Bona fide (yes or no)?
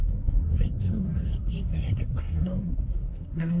no